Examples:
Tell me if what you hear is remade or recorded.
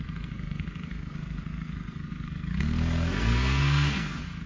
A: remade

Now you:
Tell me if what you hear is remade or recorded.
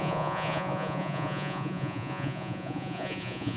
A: remade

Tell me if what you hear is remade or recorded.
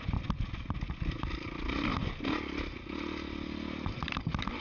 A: recorded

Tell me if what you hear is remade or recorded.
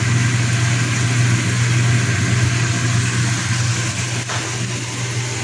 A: recorded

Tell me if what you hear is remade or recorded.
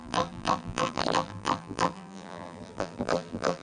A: remade